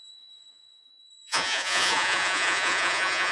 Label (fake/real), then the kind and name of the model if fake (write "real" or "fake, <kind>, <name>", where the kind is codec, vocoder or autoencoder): fake, vocoder, Vocos